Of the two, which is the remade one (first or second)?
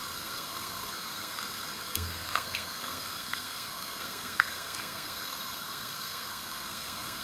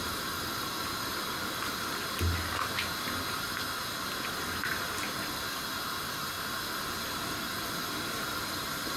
first